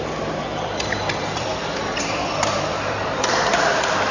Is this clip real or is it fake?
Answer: fake